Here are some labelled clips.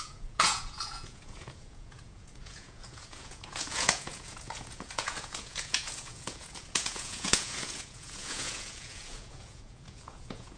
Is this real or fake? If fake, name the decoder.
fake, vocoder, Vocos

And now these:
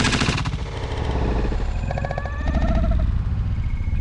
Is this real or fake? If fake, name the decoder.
real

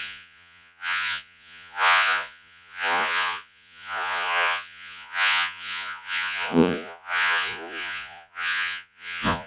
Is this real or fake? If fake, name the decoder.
fake, vocoder, Vocos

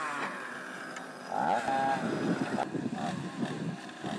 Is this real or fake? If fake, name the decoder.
real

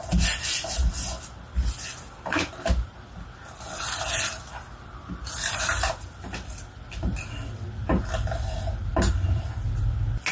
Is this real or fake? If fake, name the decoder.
real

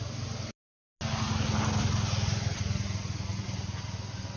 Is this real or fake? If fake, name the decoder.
real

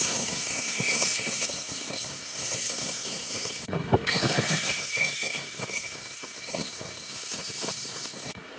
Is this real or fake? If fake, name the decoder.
fake, codec, SNAC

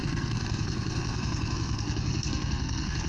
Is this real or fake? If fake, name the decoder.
fake, codec, SNAC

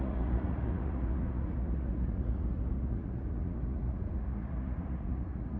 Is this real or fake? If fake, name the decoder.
fake, vocoder, Vocos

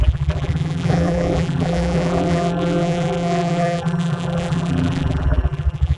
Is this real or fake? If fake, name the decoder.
fake, vocoder, BigVGAN v2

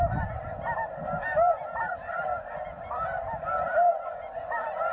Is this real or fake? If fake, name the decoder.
real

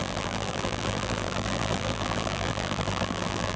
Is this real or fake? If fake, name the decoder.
fake, vocoder, BigVGAN v2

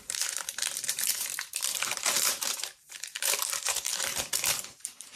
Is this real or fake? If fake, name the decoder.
fake, vocoder, BigVGAN v2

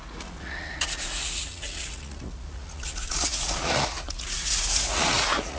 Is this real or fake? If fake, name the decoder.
fake, vocoder, Vocos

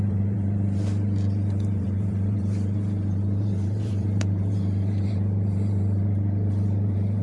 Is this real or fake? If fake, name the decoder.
fake, vocoder, BigVGAN v2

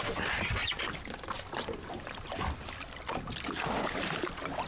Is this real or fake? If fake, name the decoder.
real